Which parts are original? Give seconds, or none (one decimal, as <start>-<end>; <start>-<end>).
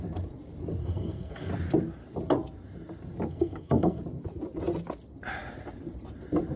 0.0-0.8; 1.5-3.3; 4.0-6.6